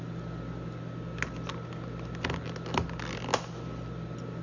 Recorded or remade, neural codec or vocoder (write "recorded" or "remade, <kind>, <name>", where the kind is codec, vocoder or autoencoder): recorded